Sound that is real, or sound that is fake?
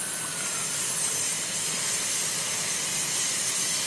real